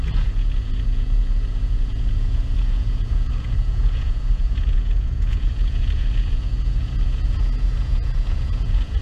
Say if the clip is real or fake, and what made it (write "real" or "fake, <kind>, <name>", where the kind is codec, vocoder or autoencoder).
fake, vocoder, Vocos